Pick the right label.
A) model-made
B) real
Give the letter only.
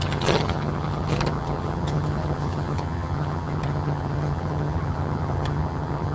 A